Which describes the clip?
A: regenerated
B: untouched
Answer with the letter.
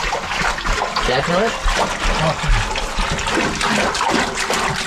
B